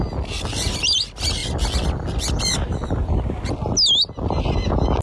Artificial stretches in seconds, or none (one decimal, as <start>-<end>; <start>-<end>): none